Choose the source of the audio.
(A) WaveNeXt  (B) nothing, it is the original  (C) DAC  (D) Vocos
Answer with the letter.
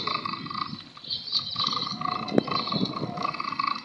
B